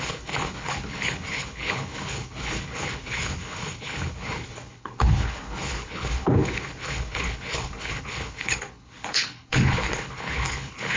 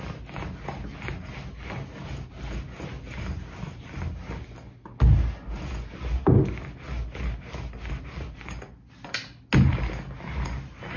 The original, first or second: second